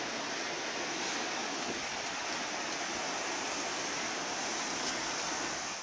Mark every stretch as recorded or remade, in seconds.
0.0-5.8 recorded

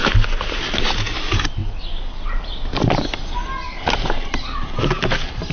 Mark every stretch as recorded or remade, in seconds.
0.0-5.5 recorded

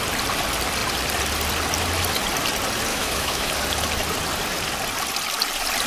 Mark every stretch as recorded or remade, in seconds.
0.0-2.9 recorded; 2.9-3.5 remade; 3.5-5.9 recorded